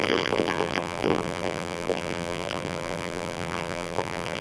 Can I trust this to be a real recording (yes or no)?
no